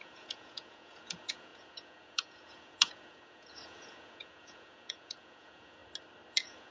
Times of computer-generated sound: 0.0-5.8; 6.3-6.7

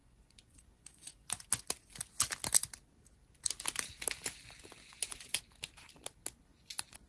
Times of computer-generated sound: 0.0-1.4; 4.8-5.4; 6.5-7.1